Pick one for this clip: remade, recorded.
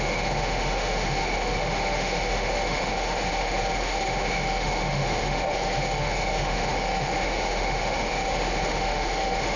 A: remade